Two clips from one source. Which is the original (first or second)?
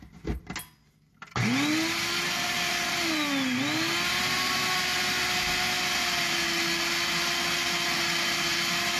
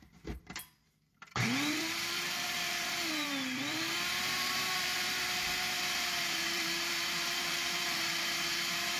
first